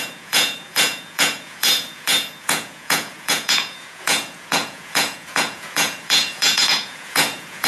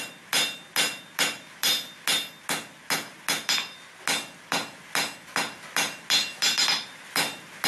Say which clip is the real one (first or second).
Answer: second